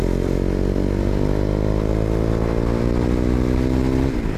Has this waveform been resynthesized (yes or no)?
no